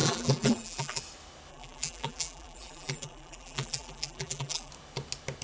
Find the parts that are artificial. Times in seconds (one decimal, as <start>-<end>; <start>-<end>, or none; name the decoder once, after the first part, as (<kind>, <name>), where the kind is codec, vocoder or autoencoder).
0.0-1.0 (vocoder, BigVGAN v2); 1.5-4.7